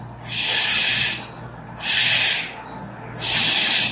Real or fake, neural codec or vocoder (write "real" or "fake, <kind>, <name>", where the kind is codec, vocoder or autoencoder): real